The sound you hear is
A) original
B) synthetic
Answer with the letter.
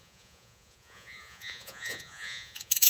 B